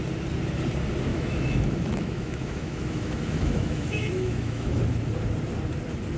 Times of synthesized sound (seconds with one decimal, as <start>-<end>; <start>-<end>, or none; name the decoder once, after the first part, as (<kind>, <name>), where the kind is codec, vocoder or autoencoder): 1.1-4.8 (autoencoder, DAC-VAE)